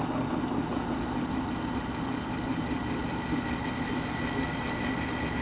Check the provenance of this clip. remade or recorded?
recorded